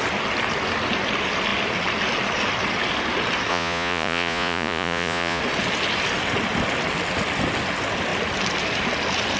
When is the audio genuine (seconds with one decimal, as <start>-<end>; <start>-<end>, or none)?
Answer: 0.0-3.5; 5.4-9.4